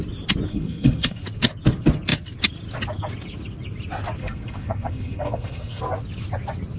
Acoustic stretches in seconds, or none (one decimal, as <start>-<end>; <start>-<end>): 0.0-0.5; 1.2-4.2; 5.8-6.8